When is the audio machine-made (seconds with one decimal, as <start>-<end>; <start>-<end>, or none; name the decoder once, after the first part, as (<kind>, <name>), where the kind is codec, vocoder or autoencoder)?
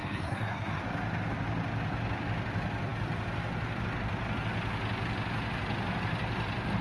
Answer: 0.0-0.8 (codec, SNAC)